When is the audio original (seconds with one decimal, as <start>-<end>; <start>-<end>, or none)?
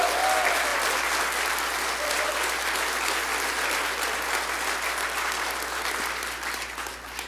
0.0-0.7; 1.2-7.3